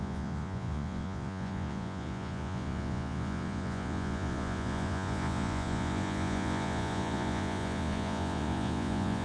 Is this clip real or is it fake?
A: fake